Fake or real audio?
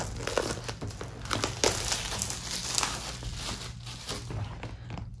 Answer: real